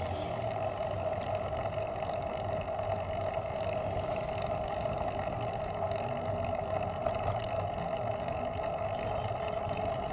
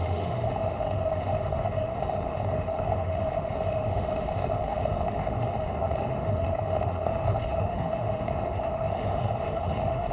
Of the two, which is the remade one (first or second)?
second